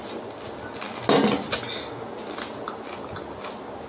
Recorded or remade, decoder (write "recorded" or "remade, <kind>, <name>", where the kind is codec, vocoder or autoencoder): recorded